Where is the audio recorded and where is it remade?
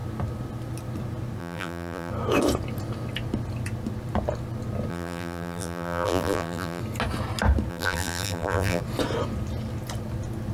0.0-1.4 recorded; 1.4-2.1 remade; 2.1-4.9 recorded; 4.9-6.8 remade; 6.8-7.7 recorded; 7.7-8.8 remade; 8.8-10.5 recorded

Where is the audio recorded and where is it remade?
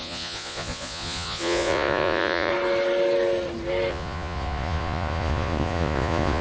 0.0-2.5 remade; 2.5-3.9 recorded; 3.9-6.4 remade